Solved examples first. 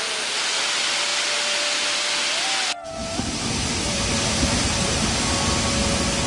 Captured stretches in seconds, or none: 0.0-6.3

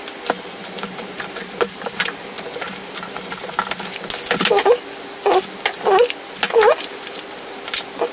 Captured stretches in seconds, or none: 0.0-0.6; 3.6-8.1

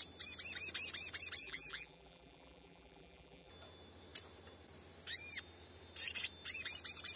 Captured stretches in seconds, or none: 0.0-1.4; 3.5-7.2

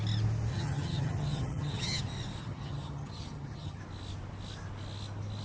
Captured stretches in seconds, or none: 0.0-0.5; 2.0-2.4; 3.8-5.4

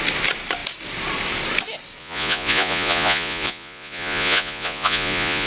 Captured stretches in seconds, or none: 0.0-2.0

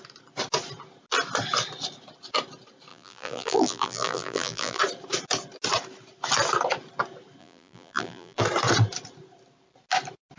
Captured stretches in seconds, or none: 0.0-2.9; 4.8-7.4; 8.4-10.4

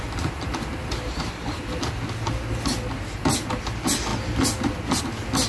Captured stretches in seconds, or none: 0.0-5.5

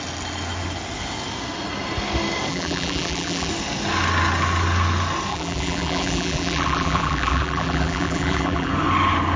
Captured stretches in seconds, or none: 0.0-2.5; 3.5-5.3; 8.7-9.4